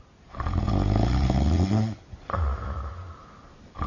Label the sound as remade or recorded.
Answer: recorded